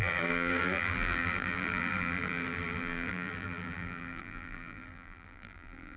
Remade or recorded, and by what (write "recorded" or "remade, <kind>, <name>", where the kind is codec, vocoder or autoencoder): remade, vocoder, BigVGAN v2